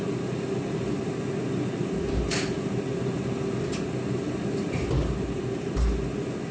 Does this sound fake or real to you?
real